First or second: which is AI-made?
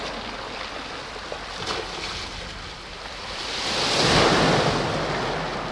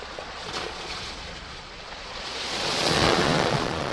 second